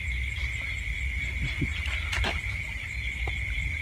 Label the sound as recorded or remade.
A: recorded